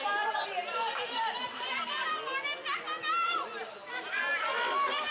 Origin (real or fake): real